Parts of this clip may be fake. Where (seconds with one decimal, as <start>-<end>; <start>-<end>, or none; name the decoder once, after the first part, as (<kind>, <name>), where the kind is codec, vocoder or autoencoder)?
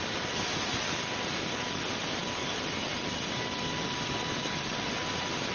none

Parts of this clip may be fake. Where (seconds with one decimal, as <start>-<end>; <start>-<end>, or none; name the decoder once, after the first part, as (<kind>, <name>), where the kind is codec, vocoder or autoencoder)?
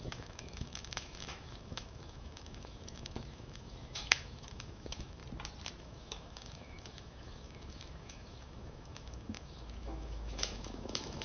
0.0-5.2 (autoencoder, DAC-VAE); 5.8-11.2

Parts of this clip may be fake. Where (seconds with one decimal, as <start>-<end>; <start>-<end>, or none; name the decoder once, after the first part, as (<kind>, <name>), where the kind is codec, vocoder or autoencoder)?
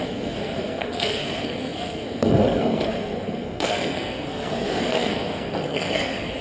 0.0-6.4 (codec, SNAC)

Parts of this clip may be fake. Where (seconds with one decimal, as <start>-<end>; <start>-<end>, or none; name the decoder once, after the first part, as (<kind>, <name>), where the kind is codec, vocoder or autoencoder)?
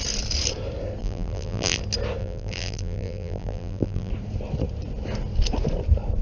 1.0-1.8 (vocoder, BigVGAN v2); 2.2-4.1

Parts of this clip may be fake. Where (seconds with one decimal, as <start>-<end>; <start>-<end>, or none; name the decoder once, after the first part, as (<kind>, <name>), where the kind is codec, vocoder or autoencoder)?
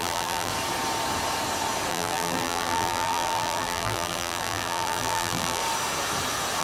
0.0-0.5 (vocoder, BigVGAN v2); 1.9-5.6